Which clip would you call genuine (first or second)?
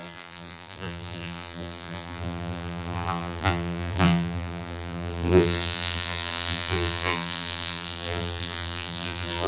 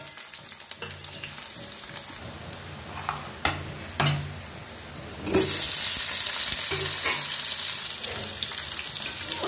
second